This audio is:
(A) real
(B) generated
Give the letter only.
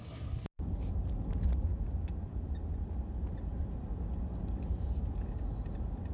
A